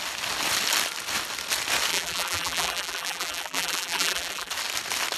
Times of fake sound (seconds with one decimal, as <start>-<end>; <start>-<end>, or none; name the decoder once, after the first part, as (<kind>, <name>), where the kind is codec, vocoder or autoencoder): 1.9-4.5 (vocoder, BigVGAN v2)